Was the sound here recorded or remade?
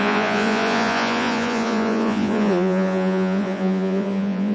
remade